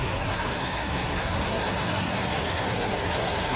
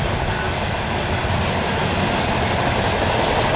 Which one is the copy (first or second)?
first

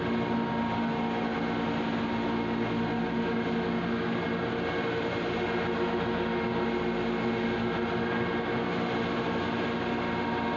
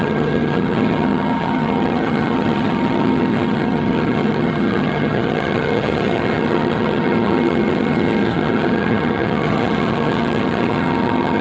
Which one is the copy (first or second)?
second